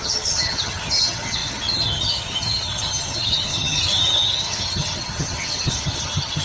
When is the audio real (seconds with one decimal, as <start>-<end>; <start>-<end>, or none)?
none